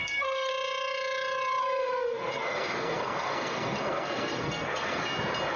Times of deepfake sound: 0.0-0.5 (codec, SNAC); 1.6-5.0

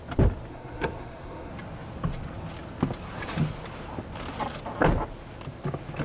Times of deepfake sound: 0.5-1.5 (codec, SNAC)